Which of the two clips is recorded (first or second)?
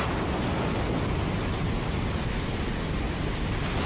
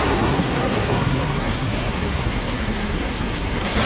first